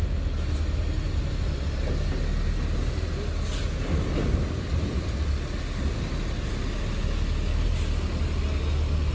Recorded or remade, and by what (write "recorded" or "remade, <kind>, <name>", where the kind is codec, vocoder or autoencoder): recorded